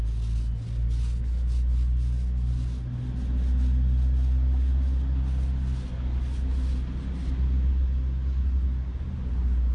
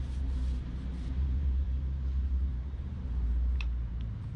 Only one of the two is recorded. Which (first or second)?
first